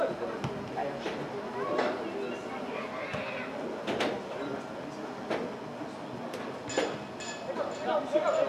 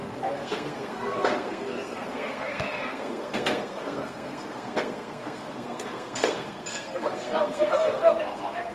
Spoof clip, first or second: second